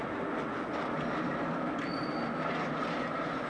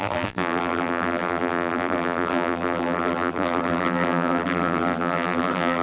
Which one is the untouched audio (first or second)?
first